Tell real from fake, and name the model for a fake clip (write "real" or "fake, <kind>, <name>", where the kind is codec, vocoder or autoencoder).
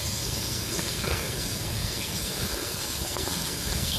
fake, codec, SNAC